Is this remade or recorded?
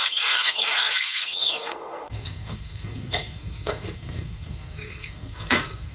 remade